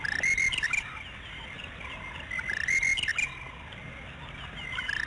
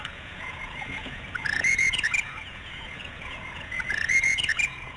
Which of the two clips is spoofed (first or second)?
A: second